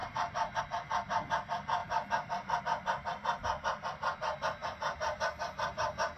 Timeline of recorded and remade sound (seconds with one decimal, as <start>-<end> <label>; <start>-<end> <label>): 0.0-0.6 remade; 0.6-1.8 recorded; 1.8-2.6 remade; 2.6-4.6 recorded; 4.6-5.2 remade; 5.2-6.2 recorded